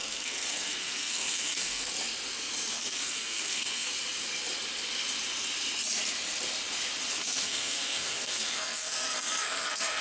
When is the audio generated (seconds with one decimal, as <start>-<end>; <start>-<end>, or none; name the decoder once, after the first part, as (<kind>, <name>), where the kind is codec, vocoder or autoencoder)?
0.0-1.9 (codec, SNAC); 2.7-3.9; 7.1-10.0